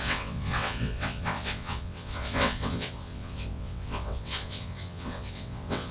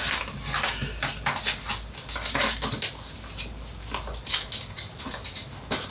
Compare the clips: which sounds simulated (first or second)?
first